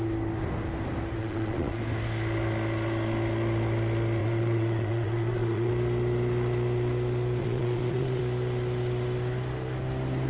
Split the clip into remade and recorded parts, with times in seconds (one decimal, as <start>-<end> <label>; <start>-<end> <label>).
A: 0.0-1.2 recorded; 1.2-1.8 remade; 1.8-4.2 recorded; 4.2-5.7 remade; 5.7-7.4 recorded; 7.4-8.2 remade; 8.2-10.3 recorded